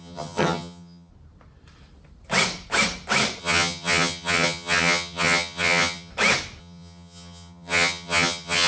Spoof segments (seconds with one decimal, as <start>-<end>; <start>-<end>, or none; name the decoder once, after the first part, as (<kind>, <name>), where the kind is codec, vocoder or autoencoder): 0.0-1.1 (vocoder, HiFi-GAN); 3.4-6.1; 6.6-8.7